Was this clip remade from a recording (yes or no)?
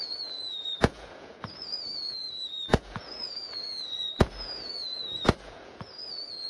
yes